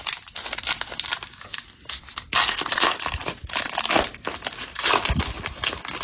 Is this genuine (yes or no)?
yes